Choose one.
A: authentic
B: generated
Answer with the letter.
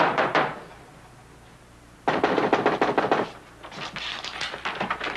A